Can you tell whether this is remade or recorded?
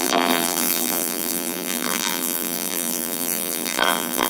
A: remade